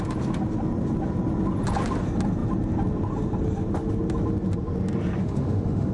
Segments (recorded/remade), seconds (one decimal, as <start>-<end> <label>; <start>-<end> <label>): 0.0-5.2 recorded; 5.2-5.9 remade